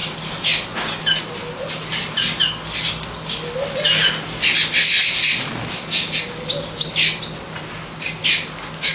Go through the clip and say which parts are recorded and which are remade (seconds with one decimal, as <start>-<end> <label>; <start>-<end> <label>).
0.0-8.9 recorded